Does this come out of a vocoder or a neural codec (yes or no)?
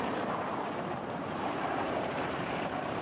yes